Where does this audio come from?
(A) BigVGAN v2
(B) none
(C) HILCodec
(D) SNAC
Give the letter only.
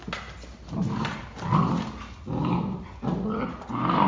B